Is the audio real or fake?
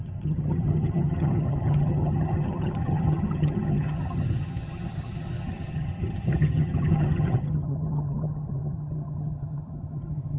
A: fake